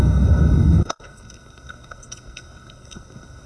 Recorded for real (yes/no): no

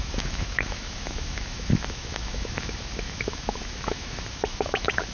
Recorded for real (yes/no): no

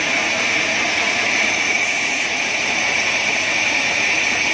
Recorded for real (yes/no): no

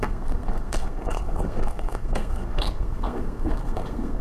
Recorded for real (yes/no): no